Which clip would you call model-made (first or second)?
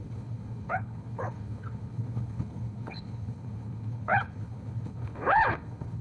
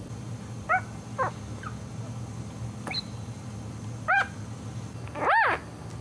first